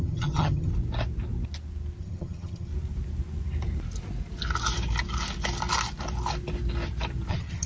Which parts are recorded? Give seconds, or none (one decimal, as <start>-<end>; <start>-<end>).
0.7-2.0; 2.7-7.3